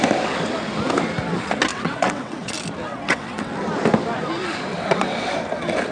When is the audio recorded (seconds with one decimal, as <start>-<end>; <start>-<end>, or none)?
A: 0.0-1.7; 2.5-2.9; 3.5-4.7; 5.3-5.9